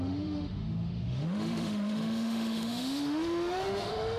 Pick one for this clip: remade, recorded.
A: remade